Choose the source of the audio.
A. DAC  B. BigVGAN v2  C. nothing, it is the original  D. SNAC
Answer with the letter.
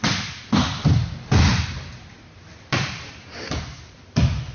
B